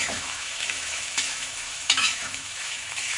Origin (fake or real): fake